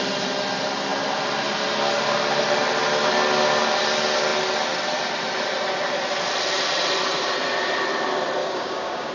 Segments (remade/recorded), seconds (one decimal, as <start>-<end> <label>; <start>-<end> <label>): 0.0-8.4 recorded; 8.4-9.1 remade